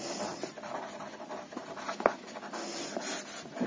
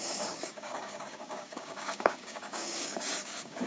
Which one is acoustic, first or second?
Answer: first